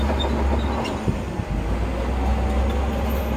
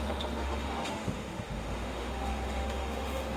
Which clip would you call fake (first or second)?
second